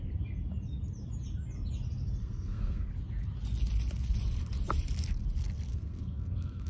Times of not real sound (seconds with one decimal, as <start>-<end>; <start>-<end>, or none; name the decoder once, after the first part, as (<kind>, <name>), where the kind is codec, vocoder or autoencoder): 2.2-2.9 (codec, SNAC); 5.7-6.7